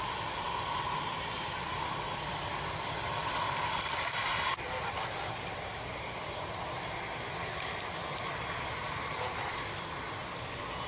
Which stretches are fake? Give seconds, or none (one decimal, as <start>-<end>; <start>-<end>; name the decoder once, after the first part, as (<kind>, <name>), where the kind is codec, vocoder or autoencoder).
2.5-3.6 (vocoder, BigVGAN v2); 7.4-9.8